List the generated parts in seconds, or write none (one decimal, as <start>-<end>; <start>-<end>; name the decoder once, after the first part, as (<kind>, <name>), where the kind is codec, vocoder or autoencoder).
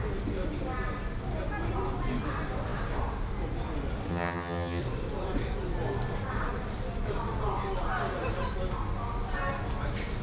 4.1-4.8 (vocoder, HiFi-GAN)